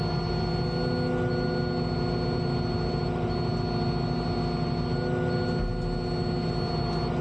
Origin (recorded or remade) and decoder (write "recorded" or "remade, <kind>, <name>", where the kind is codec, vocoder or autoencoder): recorded